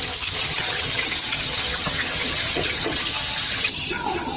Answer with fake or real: fake